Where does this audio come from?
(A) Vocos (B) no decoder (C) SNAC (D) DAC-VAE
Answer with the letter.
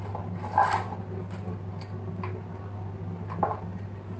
B